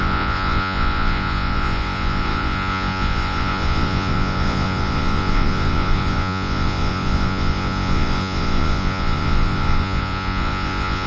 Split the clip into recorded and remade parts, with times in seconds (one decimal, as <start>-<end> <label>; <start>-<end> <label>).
0.0-11.1 remade